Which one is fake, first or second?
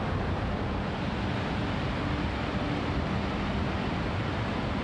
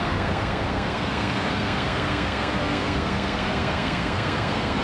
second